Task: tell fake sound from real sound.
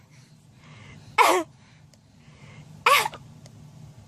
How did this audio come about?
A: real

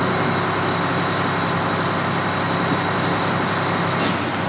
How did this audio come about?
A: real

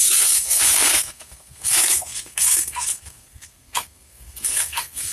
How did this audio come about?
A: fake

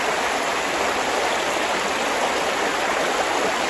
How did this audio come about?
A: real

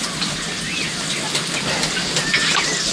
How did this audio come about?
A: real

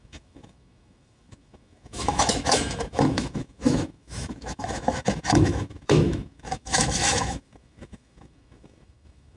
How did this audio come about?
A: fake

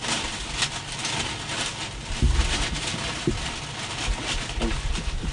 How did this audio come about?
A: real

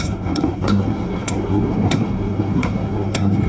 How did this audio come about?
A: fake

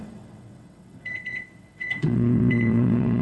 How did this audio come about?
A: fake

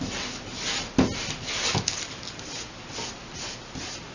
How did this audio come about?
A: real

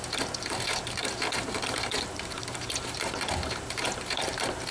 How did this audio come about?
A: fake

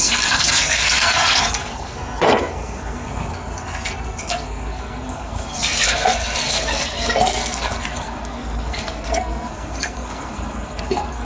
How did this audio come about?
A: fake